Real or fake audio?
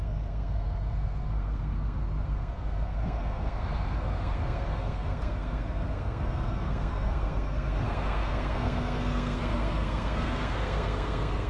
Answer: fake